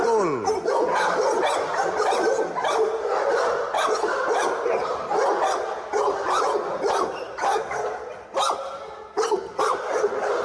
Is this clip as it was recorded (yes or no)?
yes